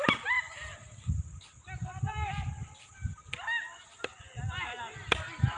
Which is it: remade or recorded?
recorded